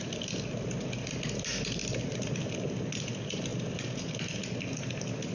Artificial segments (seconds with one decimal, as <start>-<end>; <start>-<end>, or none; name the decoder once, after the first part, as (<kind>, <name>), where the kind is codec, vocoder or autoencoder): 3.5-4.0 (vocoder, BigVGAN v2)